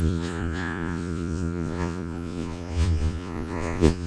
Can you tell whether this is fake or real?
fake